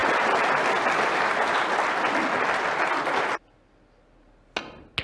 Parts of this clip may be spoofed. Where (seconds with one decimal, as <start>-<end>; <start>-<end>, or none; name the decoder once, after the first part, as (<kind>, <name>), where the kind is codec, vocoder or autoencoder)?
none

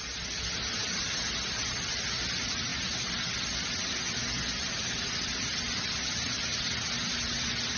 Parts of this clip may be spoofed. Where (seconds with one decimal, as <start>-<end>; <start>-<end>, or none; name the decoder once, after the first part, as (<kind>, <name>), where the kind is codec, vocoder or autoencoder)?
none

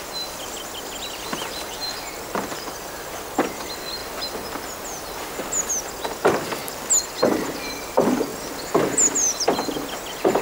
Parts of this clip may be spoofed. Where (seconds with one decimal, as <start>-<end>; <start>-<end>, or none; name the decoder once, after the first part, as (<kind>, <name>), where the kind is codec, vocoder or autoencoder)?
none

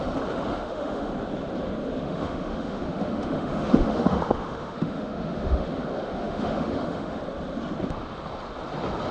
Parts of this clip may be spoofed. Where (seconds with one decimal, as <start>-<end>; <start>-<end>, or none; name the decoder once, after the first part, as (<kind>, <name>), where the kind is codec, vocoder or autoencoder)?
0.5-1.1 (autoencoder, DAC-VAE); 1.8-5.7; 6.2-7.2

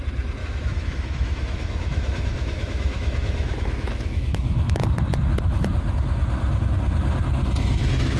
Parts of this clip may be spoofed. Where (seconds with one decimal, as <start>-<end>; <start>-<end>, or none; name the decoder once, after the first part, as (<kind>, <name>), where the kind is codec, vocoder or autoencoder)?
0.4-4.8 (autoencoder, DAC-VAE)

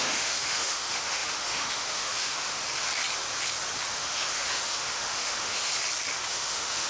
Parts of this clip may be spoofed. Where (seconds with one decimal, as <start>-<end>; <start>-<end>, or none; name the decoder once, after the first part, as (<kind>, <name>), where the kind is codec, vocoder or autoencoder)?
0.0-2.6 (autoencoder, DAC-VAE); 3.9-5.7; 6.3-6.9